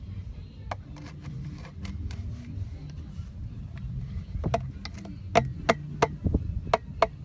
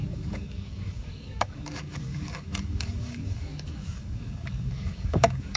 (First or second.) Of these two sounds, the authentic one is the first